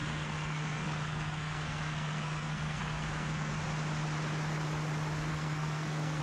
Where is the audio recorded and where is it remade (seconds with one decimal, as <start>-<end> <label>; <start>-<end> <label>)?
0.0-3.5 remade; 3.5-5.3 recorded; 5.3-6.2 remade